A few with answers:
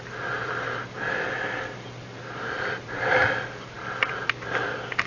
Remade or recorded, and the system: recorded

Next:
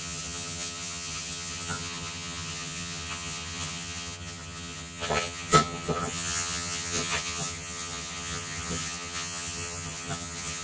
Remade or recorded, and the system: remade, vocoder, HiFi-GAN